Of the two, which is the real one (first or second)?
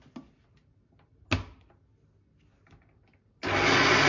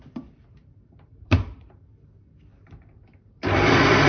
first